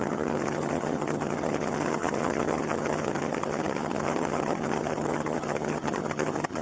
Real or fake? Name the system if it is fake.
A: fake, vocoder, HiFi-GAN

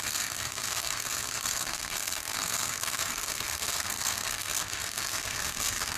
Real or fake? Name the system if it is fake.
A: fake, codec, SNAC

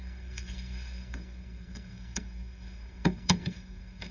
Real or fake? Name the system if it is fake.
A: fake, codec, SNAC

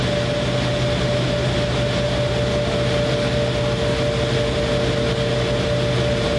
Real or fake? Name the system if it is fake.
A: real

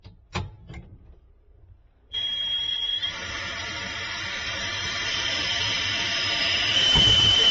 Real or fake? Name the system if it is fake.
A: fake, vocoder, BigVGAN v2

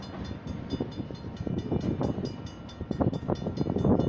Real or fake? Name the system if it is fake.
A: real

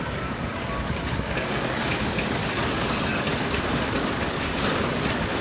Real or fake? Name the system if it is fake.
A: fake, codec, DAC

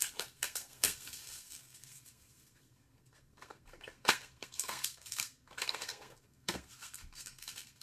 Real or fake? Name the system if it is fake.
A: fake, codec, SNAC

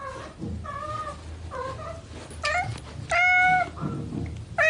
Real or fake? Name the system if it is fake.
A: real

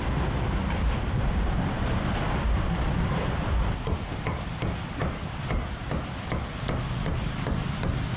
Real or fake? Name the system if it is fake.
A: fake, vocoder, BigVGAN v2